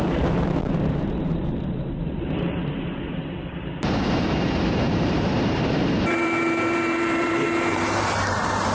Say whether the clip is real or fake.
fake